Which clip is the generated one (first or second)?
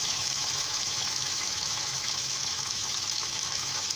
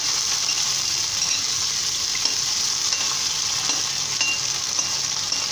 first